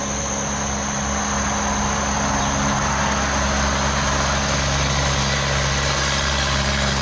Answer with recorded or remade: recorded